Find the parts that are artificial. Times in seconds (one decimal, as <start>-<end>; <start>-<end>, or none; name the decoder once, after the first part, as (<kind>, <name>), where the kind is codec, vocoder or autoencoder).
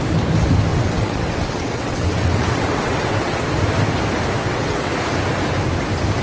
0.7-3.5 (vocoder, WaveNeXt); 4.4-4.9